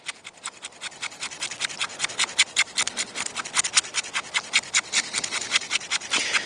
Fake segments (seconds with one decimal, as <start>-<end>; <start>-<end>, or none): none